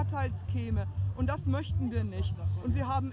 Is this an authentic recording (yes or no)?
yes